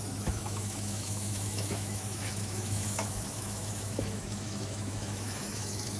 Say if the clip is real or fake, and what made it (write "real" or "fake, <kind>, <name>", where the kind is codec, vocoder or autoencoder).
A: fake, autoencoder, DAC-VAE